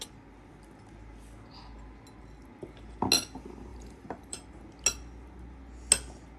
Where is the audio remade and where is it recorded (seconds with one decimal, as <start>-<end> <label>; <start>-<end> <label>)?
0.0-3.7 recorded; 3.7-4.6 remade; 4.6-6.4 recorded